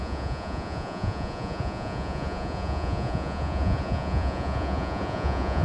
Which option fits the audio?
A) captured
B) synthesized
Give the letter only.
B